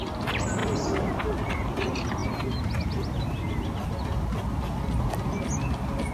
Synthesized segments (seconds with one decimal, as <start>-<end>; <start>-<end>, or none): none